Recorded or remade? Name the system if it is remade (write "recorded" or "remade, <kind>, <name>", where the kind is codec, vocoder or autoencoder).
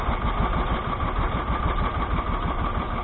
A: recorded